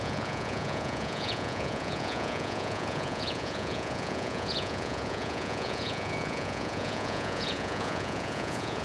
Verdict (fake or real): fake